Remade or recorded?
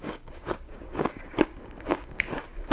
remade